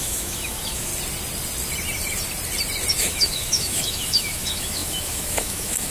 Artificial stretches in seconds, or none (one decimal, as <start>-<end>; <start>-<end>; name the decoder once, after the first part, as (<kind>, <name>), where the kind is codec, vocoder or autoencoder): 0.0-0.9 (autoencoder, DAC-VAE); 2.9-5.9